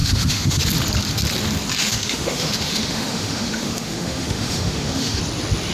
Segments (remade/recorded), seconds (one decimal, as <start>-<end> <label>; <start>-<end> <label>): 0.0-0.6 remade; 0.6-1.8 recorded; 1.8-5.2 remade; 5.2-5.7 recorded